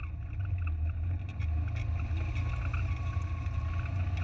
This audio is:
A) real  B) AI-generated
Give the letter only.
A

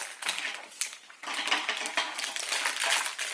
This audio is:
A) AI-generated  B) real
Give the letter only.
B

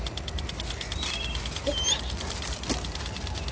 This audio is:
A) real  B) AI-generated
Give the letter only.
A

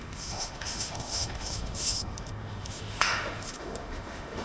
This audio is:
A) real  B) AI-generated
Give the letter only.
B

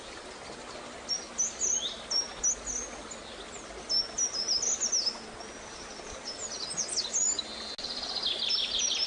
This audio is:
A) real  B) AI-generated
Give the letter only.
A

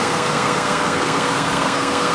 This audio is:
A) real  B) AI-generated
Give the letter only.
B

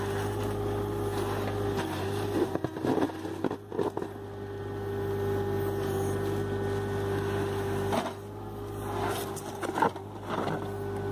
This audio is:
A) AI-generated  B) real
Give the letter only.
B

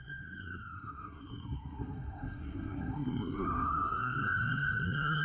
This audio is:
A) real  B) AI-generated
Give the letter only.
B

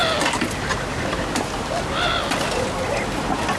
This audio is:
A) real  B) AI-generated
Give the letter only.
A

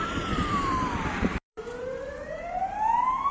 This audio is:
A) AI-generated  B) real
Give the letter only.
A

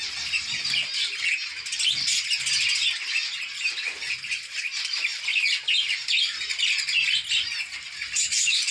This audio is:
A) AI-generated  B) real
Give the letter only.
B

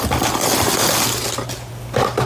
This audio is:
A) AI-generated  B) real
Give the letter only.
B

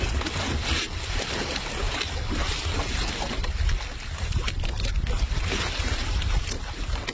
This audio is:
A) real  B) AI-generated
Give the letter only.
A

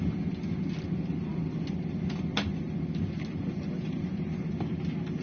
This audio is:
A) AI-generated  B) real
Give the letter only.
B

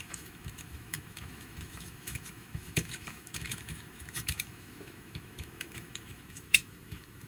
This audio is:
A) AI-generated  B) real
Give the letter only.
A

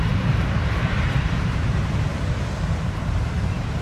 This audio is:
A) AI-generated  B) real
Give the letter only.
A